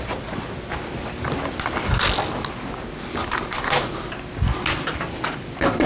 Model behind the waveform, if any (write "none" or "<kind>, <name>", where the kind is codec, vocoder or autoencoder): none